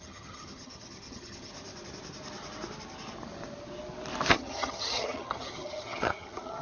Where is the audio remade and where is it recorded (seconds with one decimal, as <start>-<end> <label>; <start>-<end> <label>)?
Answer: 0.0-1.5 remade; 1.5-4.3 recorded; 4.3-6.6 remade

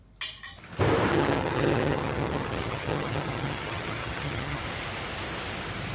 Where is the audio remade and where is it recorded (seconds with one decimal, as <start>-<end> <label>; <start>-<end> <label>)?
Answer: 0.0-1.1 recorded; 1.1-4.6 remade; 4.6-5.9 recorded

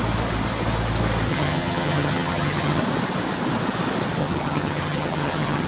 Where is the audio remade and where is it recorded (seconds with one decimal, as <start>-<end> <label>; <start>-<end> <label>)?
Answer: 0.0-1.3 recorded; 1.3-2.8 remade; 2.8-4.2 recorded; 4.2-5.7 remade

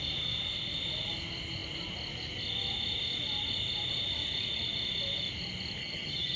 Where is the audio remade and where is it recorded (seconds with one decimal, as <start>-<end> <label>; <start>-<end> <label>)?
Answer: 0.0-5.8 recorded; 5.8-6.4 remade

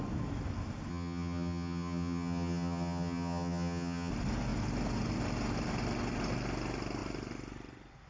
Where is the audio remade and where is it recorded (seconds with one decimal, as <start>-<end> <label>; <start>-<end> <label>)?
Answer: 0.0-0.9 recorded; 0.9-4.1 remade; 4.1-8.1 recorded

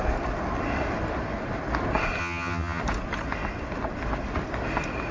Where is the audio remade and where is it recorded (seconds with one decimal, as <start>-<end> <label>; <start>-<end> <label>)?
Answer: 0.0-2.2 recorded; 2.2-2.8 remade; 2.8-5.1 recorded

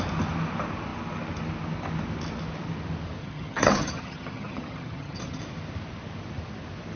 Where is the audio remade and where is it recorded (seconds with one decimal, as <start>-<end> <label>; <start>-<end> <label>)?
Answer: 0.0-3.2 recorded; 3.2-5.4 remade; 5.4-7.0 recorded

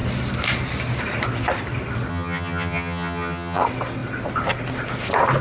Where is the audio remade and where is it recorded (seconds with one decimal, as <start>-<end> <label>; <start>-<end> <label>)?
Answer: 0.0-2.1 recorded; 2.1-3.6 remade; 3.6-5.4 recorded